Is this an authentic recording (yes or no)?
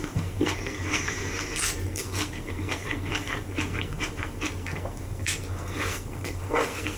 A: no